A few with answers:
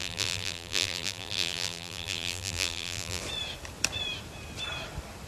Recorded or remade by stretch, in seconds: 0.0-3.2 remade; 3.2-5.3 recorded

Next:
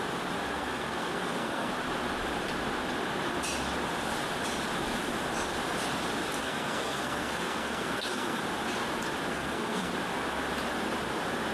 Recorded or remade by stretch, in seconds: 0.0-0.5 recorded; 0.5-1.7 remade; 1.7-6.4 recorded; 6.4-8.4 remade; 8.4-9.3 recorded; 9.3-9.9 remade; 9.9-11.5 recorded

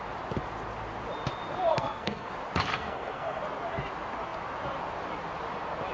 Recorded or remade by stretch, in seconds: 0.0-1.7 recorded; 1.7-2.3 remade; 2.3-2.7 recorded; 2.7-3.4 remade; 3.4-5.9 recorded

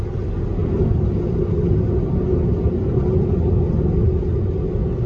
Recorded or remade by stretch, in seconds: 0.0-5.1 recorded

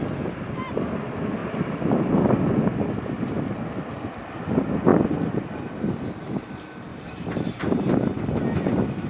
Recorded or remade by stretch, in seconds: 0.0-6.9 recorded; 6.9-7.9 remade; 7.9-9.1 recorded

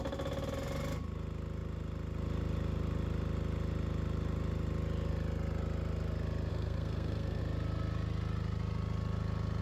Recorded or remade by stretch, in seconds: 0.0-6.5 recorded; 6.5-7.4 remade; 7.4-9.6 recorded

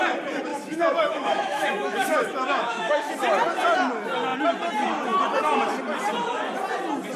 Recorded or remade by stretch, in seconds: 0.0-0.5 recorded; 0.5-3.1 remade; 3.1-7.2 recorded